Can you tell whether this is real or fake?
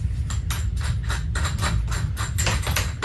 real